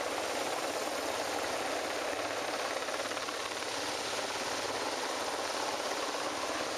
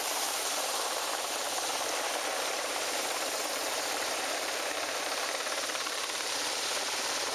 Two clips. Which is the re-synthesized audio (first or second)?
second